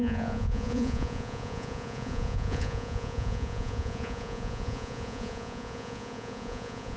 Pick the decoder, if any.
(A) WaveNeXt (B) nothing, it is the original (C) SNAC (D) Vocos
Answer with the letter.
D